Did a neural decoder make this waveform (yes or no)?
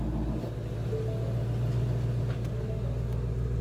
no